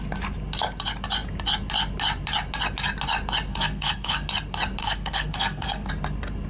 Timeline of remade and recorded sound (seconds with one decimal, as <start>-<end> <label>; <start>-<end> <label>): 0.0-3.5 recorded; 3.5-4.3 remade; 4.3-4.8 recorded; 4.8-5.9 remade; 5.9-6.5 recorded